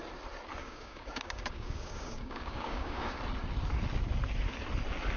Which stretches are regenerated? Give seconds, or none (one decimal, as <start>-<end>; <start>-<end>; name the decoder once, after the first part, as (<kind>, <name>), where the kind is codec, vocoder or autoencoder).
0.6-3.2 (codec, DAC)